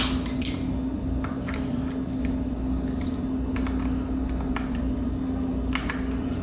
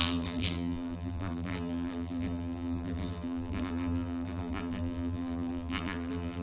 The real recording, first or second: first